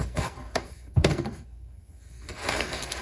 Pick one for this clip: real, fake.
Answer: fake